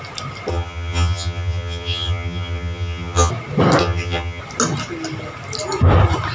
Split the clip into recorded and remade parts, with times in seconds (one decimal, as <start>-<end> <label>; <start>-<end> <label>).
0.0-0.5 recorded; 0.5-3.3 remade; 3.3-3.8 recorded; 3.8-4.4 remade; 4.4-6.3 recorded